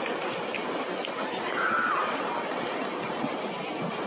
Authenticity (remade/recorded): recorded